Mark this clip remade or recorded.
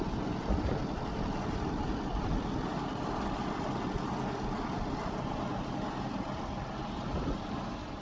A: recorded